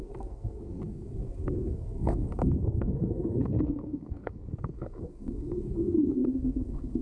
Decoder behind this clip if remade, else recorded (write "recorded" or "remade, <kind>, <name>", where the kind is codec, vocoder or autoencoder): remade, codec, SNAC